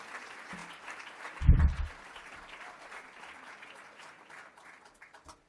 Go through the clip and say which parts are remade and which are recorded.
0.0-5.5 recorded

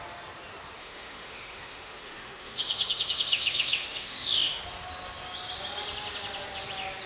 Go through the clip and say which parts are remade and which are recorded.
0.0-0.8 recorded; 0.8-4.6 remade; 4.6-7.1 recorded

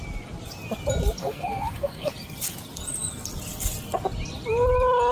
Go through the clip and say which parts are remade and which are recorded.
0.0-1.2 recorded; 1.2-2.1 remade; 2.1-5.1 recorded